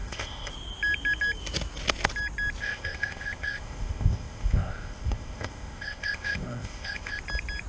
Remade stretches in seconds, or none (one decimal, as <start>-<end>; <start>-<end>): 0.0-0.5; 2.6-7.2